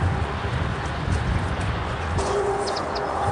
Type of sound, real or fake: fake